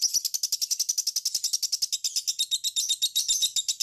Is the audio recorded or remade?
recorded